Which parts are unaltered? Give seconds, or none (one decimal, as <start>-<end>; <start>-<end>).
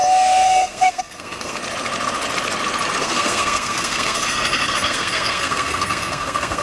1.6-3.0